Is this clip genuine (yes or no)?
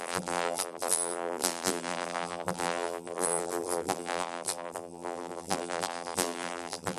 no